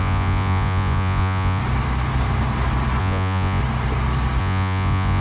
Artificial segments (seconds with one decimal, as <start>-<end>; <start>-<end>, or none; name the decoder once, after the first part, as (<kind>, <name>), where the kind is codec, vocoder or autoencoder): 0.0-1.6 (vocoder, Vocos); 3.0-3.6; 4.4-5.2